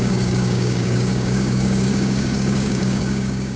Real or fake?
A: fake